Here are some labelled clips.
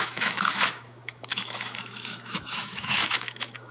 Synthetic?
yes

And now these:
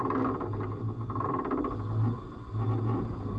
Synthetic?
no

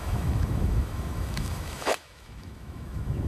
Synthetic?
yes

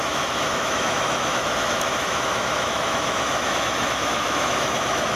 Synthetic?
yes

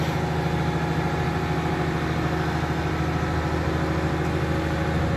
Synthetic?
no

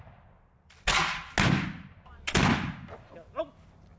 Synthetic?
no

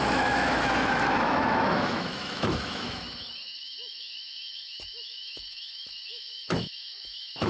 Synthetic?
yes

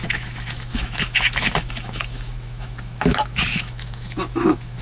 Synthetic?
yes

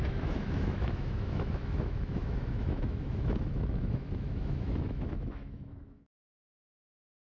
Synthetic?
yes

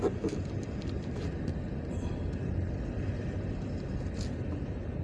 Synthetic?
no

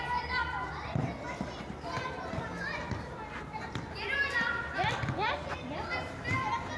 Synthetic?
no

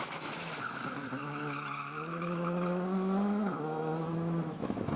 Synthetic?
yes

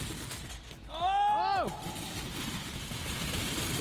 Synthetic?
no